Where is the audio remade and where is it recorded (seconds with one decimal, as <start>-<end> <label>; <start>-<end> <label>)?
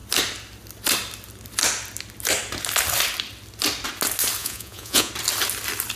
0.0-4.4 recorded; 4.4-5.1 remade; 5.1-6.0 recorded